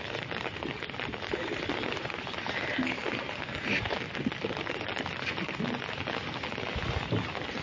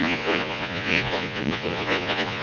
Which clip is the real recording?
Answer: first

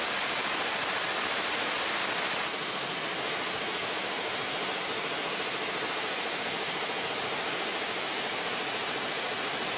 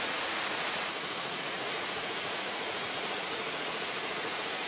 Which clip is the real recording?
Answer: first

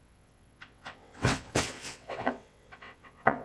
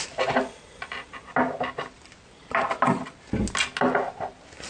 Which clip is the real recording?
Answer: second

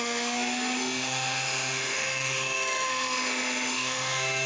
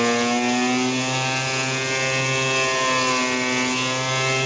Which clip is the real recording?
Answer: second